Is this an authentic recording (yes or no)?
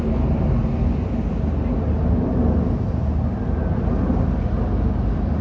yes